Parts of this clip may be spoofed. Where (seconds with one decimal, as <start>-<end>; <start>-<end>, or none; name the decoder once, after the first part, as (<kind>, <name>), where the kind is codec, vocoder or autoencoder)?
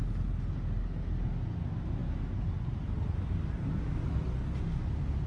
none